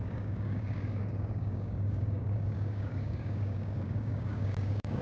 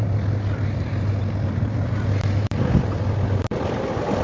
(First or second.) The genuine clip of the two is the second